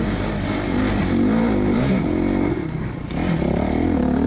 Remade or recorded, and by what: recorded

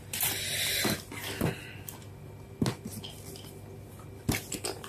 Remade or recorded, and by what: recorded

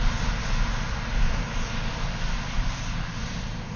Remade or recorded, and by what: recorded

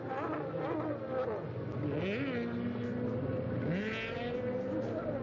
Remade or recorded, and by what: recorded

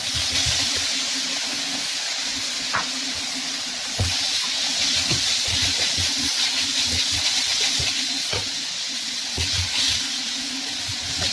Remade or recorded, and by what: remade, vocoder, Vocos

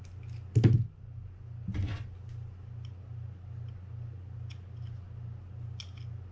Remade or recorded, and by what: recorded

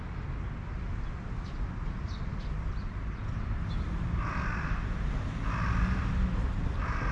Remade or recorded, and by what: recorded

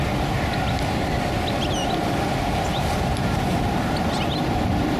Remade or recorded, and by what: recorded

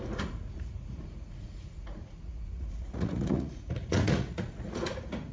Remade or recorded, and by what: remade, vocoder, Vocos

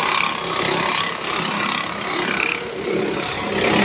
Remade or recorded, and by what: recorded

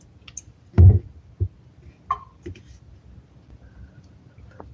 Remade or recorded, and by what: recorded